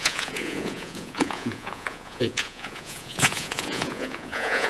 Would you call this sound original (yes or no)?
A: no